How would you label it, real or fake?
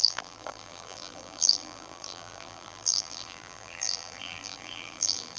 fake